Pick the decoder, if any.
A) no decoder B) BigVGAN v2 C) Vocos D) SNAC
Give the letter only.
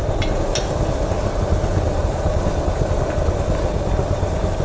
A